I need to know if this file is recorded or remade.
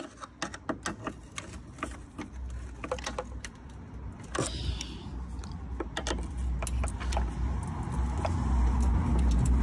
recorded